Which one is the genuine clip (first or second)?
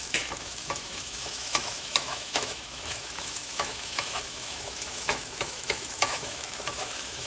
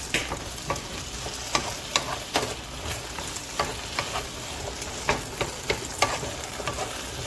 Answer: second